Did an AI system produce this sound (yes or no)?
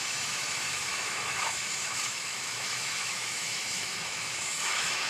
yes